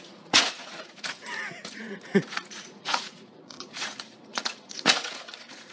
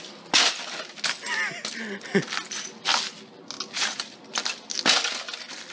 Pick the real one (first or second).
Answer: second